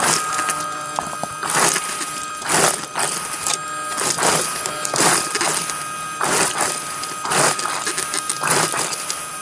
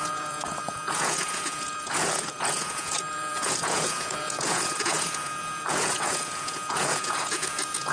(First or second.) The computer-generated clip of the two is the second